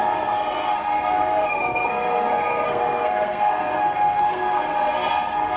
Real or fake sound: fake